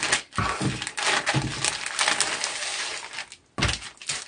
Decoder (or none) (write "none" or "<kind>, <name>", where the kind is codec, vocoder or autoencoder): none